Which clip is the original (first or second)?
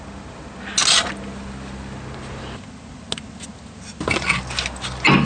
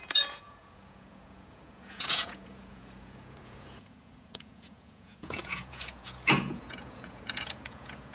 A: first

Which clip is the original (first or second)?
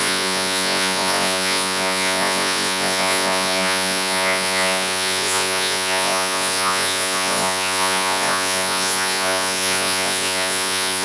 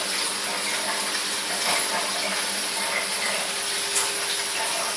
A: second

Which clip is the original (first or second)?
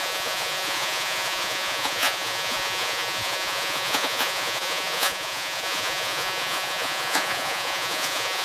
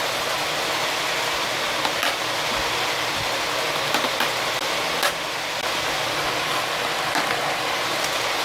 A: second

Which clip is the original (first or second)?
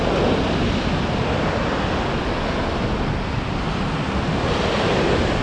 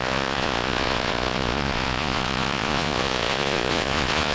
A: first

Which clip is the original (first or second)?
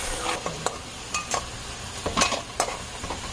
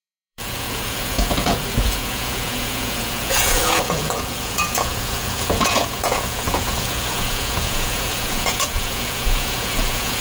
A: first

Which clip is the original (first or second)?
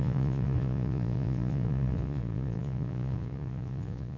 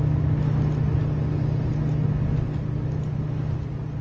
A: second